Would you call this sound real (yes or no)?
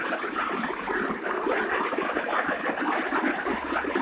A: yes